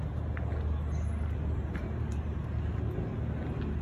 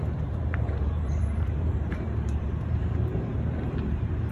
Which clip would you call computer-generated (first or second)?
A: second